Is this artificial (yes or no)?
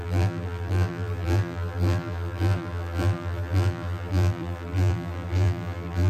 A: yes